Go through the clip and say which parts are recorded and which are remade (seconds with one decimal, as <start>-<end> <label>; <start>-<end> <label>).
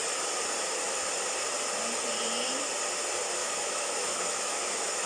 0.0-3.4 recorded; 3.4-5.1 remade